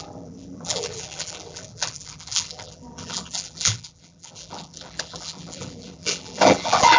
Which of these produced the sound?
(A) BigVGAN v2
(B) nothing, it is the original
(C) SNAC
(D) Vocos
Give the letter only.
A